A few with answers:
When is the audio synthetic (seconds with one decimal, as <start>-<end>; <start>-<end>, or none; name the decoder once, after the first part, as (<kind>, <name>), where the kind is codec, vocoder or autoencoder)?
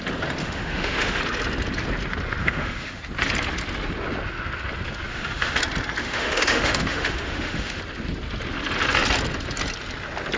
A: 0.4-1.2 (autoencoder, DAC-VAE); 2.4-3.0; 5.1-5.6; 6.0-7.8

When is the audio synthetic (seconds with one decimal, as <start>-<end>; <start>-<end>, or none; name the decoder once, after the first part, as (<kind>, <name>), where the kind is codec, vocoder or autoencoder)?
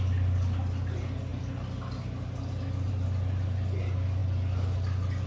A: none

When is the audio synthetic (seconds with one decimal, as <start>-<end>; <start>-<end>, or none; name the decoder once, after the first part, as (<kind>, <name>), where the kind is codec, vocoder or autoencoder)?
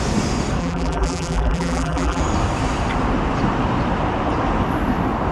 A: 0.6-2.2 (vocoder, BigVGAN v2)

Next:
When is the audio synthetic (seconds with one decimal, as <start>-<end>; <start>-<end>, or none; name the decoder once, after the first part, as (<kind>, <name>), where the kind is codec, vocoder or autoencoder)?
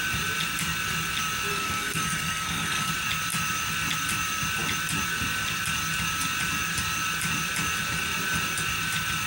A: 1.5-2.9 (codec, SNAC)